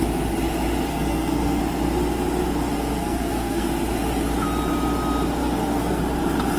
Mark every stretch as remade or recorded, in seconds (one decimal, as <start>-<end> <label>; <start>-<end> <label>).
0.0-0.9 recorded; 0.9-1.6 remade; 1.6-3.0 recorded; 3.0-3.7 remade; 3.7-5.4 recorded; 5.4-6.0 remade; 6.0-6.6 recorded